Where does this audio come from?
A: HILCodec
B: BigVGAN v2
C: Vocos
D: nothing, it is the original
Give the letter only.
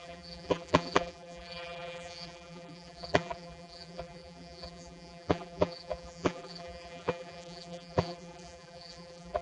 B